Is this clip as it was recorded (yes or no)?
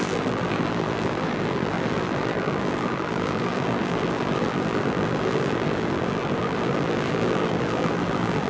no